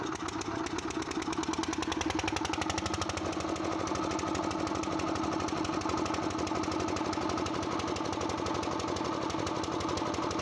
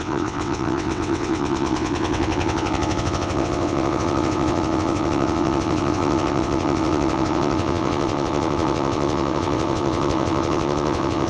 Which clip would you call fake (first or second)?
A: second